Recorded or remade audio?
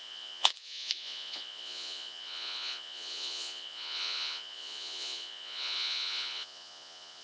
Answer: remade